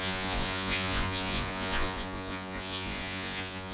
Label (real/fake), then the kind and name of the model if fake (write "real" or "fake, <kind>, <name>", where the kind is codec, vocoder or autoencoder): fake, vocoder, Vocos